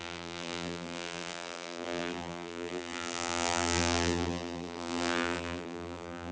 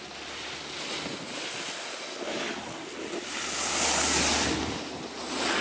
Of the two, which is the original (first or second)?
second